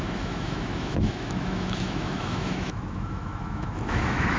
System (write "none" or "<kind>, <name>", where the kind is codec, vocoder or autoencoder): autoencoder, DAC-VAE